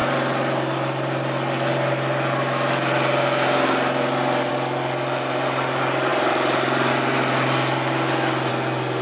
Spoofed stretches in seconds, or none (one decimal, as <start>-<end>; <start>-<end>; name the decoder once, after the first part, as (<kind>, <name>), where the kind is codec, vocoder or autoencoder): none